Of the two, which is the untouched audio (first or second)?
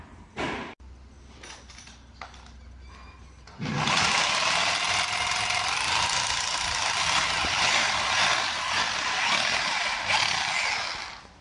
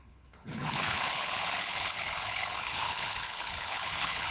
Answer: first